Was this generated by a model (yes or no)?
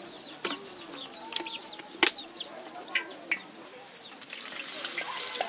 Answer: no